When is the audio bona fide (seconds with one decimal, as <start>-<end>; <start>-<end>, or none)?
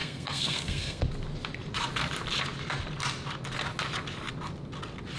1.0-5.2